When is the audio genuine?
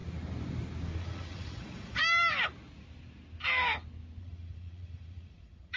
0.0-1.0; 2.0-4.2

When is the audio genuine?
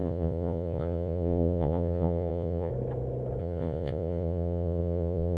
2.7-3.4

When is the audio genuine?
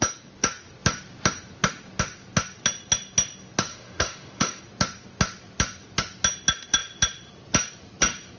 0.0-3.7; 4.6-8.4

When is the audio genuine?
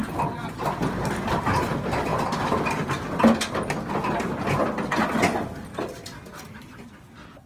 0.0-7.5